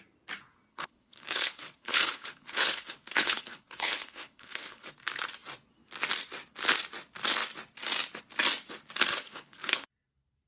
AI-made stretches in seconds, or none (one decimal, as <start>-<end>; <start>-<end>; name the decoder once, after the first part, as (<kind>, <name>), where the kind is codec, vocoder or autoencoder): 0.7-4.9 (codec, HILCodec); 9.1-9.9